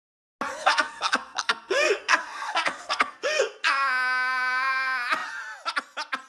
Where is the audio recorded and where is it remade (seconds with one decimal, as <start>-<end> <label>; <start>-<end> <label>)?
0.0-0.5 recorded; 0.5-3.7 remade; 3.7-6.3 recorded